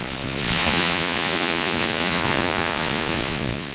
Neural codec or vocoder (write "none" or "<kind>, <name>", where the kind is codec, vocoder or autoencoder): vocoder, Vocos